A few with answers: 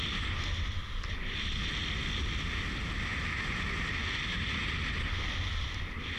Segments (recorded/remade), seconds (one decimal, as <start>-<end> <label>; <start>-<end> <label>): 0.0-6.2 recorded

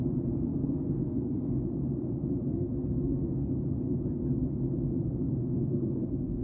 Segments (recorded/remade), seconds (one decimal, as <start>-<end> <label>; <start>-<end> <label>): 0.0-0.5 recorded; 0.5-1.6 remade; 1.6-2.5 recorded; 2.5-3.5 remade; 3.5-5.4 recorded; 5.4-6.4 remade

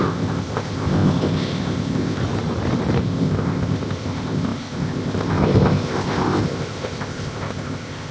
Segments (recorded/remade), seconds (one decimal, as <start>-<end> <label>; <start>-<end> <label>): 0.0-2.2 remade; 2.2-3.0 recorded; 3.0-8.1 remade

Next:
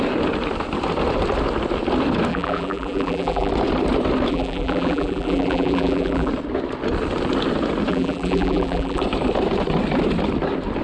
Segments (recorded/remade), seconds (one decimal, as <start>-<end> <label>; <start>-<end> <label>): 0.0-2.3 recorded; 2.3-3.5 remade; 3.5-4.3 recorded; 4.3-6.3 remade; 6.3-7.9 recorded; 7.9-9.0 remade; 9.0-10.8 recorded

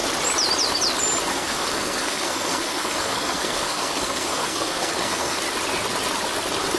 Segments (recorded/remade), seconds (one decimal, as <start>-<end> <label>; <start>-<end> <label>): 0.0-1.3 recorded; 1.3-5.4 remade; 5.4-6.8 recorded